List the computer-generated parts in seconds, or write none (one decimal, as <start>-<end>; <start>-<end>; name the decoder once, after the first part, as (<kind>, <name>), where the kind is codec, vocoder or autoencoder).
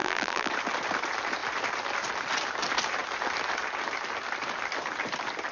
0.0-0.5 (vocoder, BigVGAN v2)